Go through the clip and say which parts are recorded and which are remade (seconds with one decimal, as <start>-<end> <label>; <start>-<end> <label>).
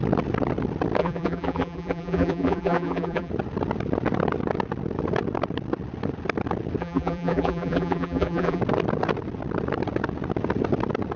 0.0-1.0 recorded; 1.0-3.3 remade; 3.3-6.8 recorded; 6.8-8.6 remade; 8.6-11.2 recorded